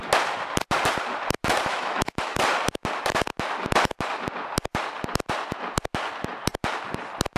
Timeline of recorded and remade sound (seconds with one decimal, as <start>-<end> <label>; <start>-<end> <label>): 0.0-1.7 recorded; 1.7-2.4 remade; 2.4-7.4 recorded